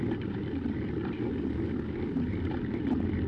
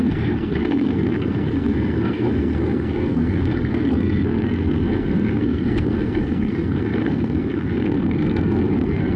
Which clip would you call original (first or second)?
first